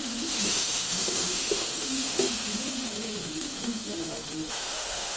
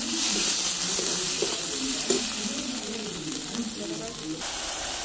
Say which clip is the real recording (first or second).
second